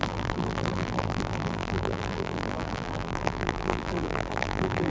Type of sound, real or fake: fake